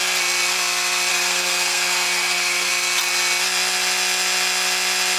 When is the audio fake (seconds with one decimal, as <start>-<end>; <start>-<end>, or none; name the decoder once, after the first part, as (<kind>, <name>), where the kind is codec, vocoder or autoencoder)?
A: 1.1-2.7 (codec, SNAC)